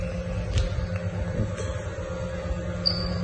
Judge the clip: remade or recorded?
recorded